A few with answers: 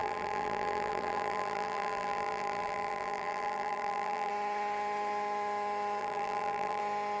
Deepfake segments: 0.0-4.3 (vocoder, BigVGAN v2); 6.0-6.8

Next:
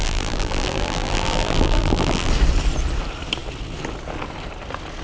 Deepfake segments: 0.0-2.3 (vocoder, BigVGAN v2)

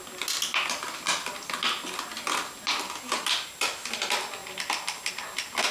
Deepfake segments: none